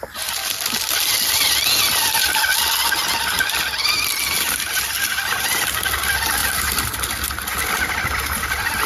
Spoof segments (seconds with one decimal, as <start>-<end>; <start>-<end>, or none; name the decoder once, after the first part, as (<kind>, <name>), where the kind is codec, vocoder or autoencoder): 6.4-8.9 (vocoder, BigVGAN v2)